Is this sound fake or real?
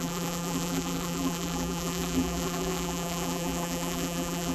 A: fake